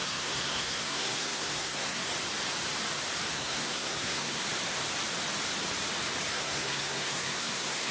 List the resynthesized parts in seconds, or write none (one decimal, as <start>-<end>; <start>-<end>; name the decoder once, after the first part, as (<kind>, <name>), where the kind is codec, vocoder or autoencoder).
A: 0.0-2.1 (codec, SNAC); 3.3-4.4; 6.3-7.9

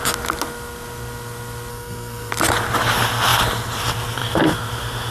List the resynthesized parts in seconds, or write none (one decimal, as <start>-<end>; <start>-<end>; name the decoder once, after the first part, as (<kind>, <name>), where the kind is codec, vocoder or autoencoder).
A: 1.7-2.3 (codec, SNAC)

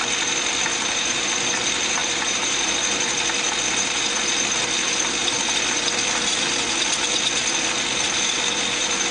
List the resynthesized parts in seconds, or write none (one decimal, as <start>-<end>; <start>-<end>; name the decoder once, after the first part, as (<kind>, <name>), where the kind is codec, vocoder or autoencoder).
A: 0.7-1.2 (vocoder, BigVGAN v2); 2.0-2.7

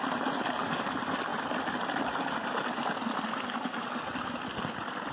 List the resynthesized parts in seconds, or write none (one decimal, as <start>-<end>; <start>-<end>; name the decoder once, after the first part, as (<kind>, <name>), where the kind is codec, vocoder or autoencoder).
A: none